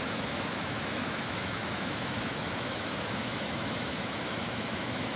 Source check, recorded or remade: remade